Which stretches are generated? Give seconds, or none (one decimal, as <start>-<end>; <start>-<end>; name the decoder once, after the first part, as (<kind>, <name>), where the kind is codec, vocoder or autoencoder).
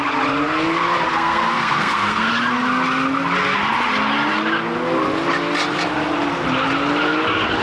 1.1-2.3 (codec, SNAC)